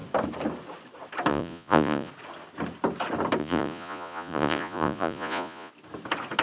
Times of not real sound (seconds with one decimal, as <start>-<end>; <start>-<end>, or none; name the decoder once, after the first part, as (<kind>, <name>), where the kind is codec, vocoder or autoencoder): 1.3-2.1 (vocoder, Vocos); 3.4-5.7